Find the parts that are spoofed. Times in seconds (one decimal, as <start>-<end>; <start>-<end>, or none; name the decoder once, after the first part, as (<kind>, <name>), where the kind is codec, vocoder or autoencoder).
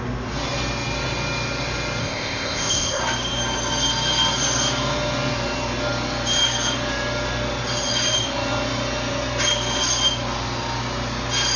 2.0-3.0 (codec, ZipCodec)